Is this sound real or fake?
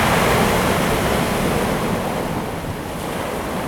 real